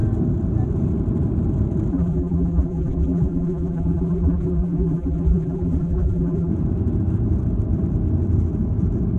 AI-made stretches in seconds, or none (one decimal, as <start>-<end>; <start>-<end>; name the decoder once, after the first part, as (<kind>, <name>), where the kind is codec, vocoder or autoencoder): 1.9-6.5 (vocoder, BigVGAN v2)